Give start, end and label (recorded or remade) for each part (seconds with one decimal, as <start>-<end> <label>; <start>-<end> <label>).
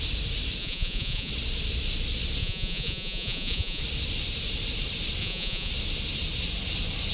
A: 0.0-0.6 recorded; 0.6-1.3 remade; 1.3-2.4 recorded; 2.4-3.8 remade; 3.8-5.2 recorded; 5.2-5.7 remade; 5.7-7.1 recorded